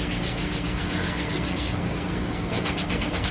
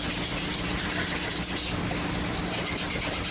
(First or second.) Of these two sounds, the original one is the second